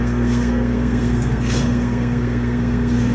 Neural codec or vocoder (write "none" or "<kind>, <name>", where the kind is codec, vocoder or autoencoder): codec, SNAC